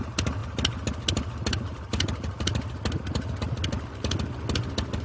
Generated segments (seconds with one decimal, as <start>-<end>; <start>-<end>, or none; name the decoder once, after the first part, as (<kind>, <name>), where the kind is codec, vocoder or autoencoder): none